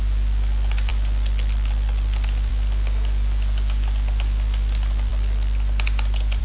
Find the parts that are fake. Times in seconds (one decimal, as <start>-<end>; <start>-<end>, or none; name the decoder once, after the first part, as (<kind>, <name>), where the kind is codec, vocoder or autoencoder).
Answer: none